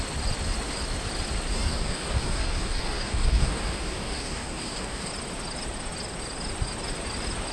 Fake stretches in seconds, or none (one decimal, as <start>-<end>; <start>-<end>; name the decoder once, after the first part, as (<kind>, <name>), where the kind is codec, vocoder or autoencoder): 1.5-5.1 (codec, DAC)